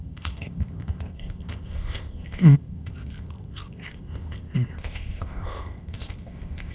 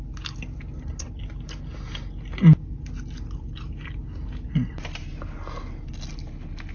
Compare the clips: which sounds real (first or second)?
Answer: second